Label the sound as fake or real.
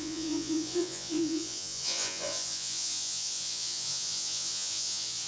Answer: fake